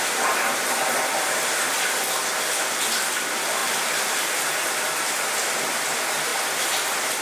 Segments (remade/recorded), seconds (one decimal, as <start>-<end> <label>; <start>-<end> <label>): 0.0-3.6 recorded; 3.6-4.4 remade; 4.4-6.3 recorded; 6.3-7.2 remade